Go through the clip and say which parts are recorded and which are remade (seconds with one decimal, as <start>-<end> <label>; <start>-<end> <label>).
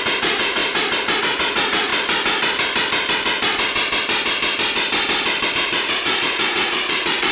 0.0-0.6 remade; 0.6-1.2 recorded; 1.2-1.9 remade; 1.9-5.5 recorded; 5.5-7.3 remade